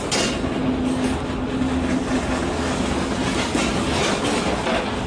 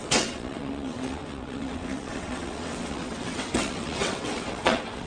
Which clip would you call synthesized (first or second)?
second